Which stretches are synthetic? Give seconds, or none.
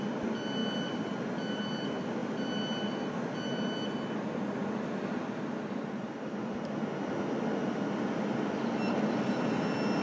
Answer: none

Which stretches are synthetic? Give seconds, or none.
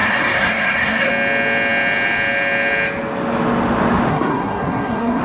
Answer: 0.0-1.1 (codec, SNAC); 4.1-5.2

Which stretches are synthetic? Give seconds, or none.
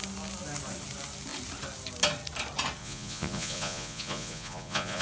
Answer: 2.8-5.0 (vocoder, Vocos)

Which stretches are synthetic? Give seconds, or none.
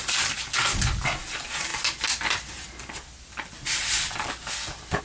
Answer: none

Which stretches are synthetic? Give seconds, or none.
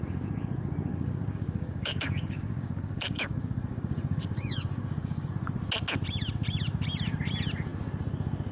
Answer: 0.9-5.3 (codec, DAC)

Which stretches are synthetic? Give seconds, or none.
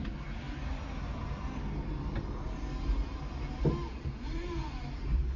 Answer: none